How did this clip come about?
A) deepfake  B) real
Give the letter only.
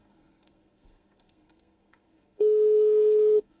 A